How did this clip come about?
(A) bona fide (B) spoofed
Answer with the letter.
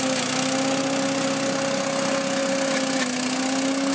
A